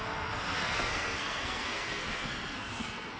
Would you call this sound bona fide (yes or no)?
no